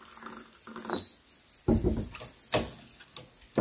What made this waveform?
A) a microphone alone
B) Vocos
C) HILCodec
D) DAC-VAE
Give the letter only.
A